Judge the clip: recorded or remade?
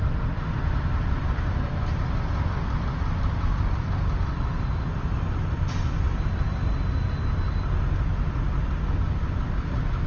recorded